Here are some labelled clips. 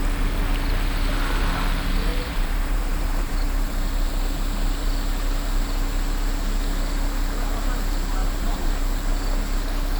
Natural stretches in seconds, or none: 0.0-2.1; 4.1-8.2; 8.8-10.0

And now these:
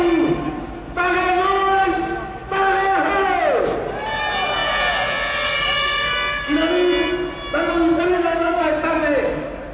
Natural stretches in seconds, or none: 0.0-8.1; 8.7-9.7

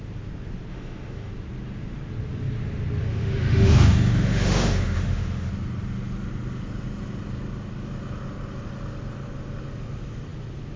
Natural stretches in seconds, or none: 0.0-0.7; 1.3-3.0; 5.5-10.8